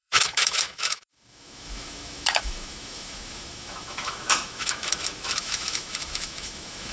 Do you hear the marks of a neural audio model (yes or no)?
yes